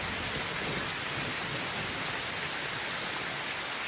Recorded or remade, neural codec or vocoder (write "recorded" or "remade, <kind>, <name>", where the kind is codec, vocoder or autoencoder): recorded